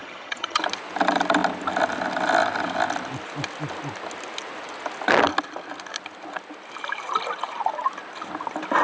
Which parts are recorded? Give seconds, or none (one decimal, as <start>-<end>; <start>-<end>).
0.6-8.8